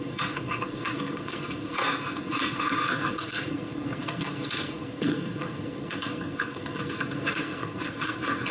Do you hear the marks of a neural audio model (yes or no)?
yes